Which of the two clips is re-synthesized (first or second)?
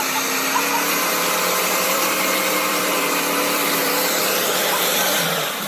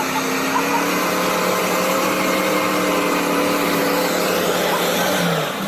first